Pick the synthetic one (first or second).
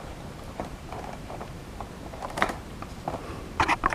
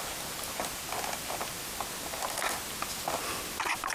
first